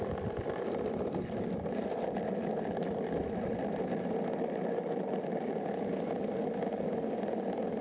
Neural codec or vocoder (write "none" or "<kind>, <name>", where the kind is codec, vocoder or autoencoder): none